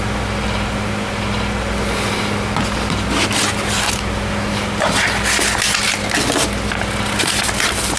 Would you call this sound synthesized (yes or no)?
no